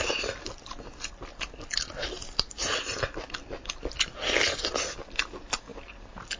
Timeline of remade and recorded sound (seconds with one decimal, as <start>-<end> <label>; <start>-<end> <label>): 0.0-6.4 recorded